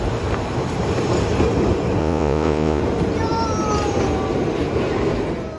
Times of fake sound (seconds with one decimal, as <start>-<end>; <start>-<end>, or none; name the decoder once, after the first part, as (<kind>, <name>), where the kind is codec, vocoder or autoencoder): 2.0-2.8 (vocoder, Vocos)